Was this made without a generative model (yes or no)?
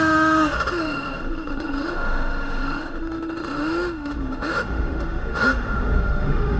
no